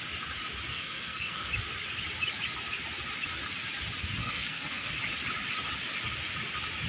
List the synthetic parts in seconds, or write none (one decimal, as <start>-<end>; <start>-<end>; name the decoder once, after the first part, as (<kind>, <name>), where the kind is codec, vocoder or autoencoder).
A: 0.7-1.5 (codec, SNAC); 4.2-4.9